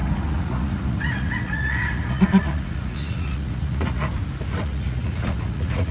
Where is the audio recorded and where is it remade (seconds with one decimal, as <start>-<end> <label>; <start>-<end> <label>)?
0.0-4.1 remade; 4.1-4.6 recorded; 4.6-5.9 remade